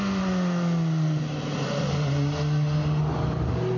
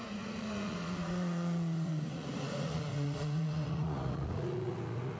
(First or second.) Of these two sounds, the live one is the first